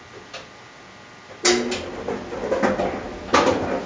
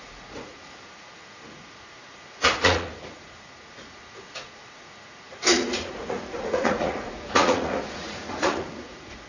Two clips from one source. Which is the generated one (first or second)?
second